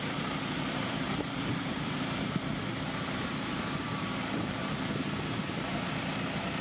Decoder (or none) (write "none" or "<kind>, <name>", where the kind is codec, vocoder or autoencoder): vocoder, BigVGAN v2